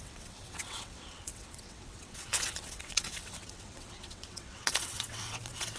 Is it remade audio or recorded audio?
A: remade